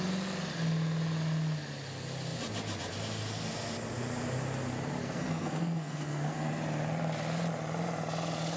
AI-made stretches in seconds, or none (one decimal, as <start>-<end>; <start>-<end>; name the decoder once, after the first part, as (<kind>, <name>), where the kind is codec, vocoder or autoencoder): 5.0-6.5 (codec, SNAC)